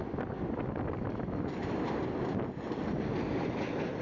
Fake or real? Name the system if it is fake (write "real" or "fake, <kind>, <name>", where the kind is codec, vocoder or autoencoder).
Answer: real